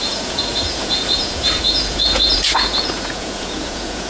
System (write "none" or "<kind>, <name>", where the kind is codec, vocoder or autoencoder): vocoder, Vocos